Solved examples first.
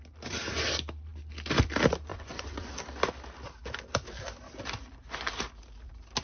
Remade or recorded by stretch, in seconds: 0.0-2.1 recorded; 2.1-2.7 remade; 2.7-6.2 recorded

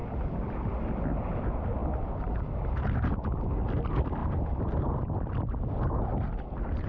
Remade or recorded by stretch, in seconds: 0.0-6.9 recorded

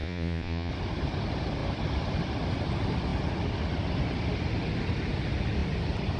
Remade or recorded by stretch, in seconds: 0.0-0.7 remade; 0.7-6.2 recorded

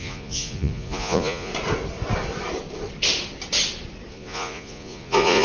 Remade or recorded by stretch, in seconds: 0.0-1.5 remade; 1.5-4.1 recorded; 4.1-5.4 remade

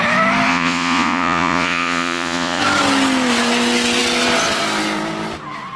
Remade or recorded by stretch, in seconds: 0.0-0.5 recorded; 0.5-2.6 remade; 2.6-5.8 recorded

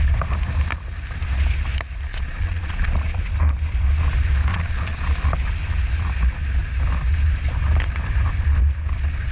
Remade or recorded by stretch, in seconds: 0.0-2.1 recorded; 2.1-3.2 remade; 3.2-4.5 recorded; 4.5-5.1 remade; 5.1-9.3 recorded

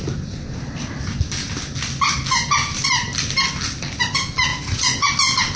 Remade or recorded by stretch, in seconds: 0.0-4.5 recorded; 4.5-5.1 remade; 5.1-5.6 recorded

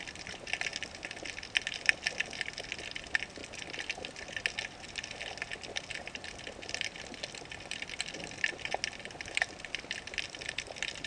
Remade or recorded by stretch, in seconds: 0.0-11.1 recorded